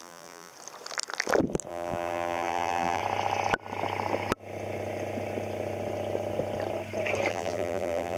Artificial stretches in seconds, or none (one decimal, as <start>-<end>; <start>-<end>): 0.0-0.5; 1.7-3.0; 7.3-8.2